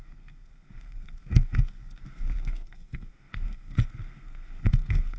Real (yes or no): no